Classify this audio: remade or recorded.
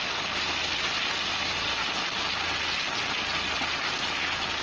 recorded